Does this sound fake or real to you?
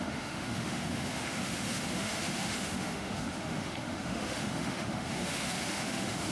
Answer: fake